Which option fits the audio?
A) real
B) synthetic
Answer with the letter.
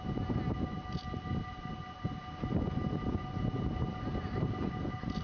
A